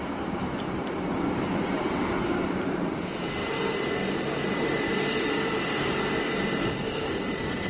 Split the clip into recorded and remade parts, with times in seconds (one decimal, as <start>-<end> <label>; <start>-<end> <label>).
0.0-7.7 recorded